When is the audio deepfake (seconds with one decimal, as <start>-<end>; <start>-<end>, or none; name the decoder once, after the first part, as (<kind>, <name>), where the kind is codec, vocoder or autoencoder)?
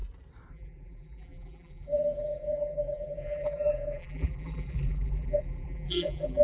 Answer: 0.5-6.4 (vocoder, BigVGAN v2)